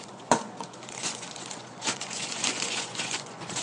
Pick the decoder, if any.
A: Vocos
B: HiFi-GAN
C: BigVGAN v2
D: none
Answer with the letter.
A